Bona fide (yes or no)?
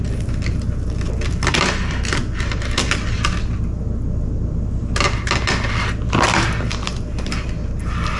yes